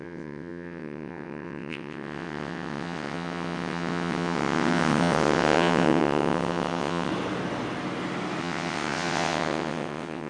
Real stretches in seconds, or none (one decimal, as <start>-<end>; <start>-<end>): 7.1-8.4